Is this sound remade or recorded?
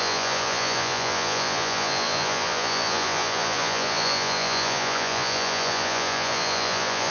remade